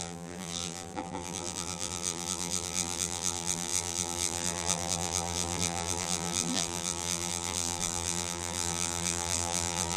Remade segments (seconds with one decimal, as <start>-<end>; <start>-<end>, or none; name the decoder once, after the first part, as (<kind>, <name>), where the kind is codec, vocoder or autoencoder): 0.0-10.0 (vocoder, BigVGAN v2)